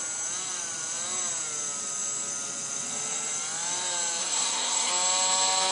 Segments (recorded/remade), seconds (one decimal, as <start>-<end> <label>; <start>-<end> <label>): 0.0-4.2 recorded; 4.2-4.9 remade; 4.9-5.7 recorded